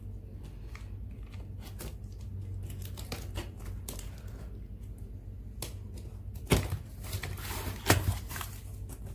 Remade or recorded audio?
recorded